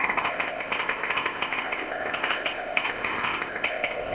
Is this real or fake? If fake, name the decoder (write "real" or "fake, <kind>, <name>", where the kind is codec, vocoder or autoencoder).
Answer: fake, codec, ZipCodec